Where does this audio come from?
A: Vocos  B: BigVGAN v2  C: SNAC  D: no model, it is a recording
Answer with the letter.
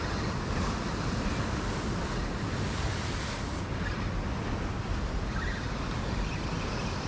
D